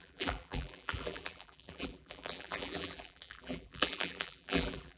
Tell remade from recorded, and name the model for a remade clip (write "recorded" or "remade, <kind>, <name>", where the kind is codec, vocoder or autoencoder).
remade, vocoder, BigVGAN v2